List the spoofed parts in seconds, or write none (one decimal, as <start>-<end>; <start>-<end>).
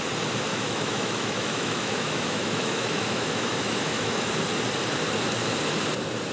0.5-4.3